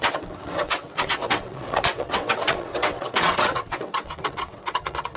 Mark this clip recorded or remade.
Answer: remade